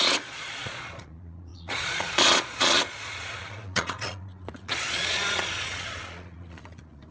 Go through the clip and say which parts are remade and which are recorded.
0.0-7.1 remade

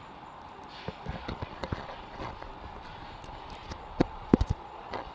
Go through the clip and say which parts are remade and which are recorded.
0.0-1.2 recorded; 1.2-2.5 remade; 2.5-3.6 recorded; 3.6-5.1 remade